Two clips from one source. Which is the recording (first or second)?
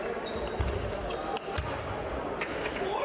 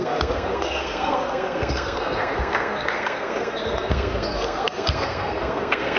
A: first